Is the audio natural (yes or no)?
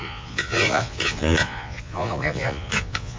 no